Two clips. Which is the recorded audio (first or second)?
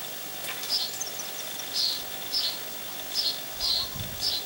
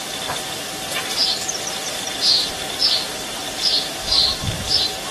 first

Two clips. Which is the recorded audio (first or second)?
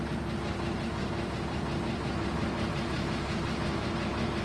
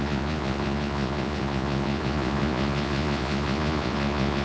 first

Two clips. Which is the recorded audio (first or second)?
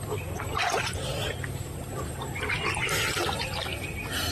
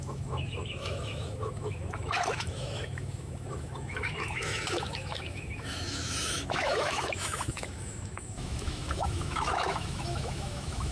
first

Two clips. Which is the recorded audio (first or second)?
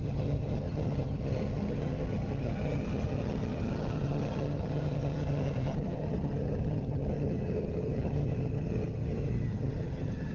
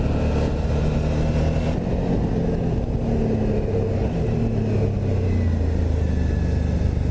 second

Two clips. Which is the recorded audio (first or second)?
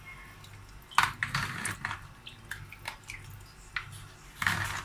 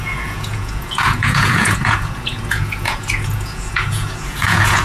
first